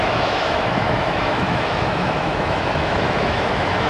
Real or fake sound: fake